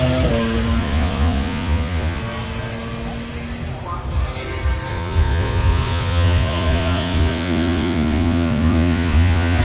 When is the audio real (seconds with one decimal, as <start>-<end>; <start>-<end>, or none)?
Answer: 0.0-0.8; 2.2-4.9